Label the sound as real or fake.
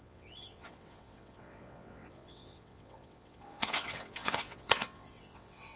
fake